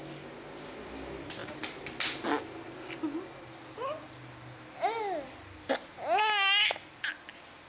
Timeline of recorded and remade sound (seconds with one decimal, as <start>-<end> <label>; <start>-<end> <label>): 0.0-7.7 recorded